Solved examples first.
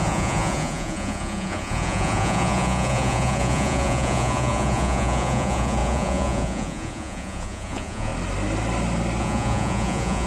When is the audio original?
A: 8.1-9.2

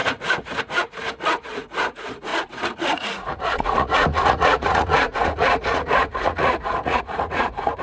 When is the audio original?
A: none

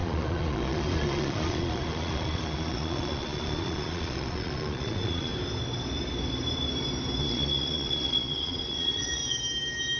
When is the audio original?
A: 5.3-7.2; 9.2-10.0

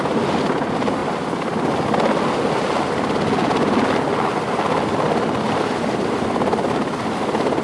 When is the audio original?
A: 0.0-7.6